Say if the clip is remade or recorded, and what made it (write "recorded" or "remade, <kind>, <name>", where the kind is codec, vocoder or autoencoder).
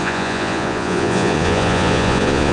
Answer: remade, vocoder, Vocos